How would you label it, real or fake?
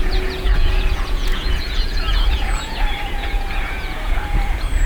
fake